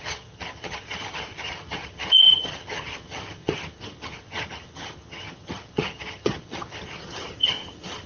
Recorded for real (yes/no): no